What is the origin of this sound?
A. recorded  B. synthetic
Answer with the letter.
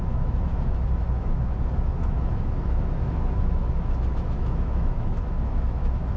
B